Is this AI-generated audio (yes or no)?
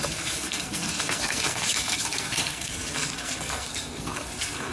yes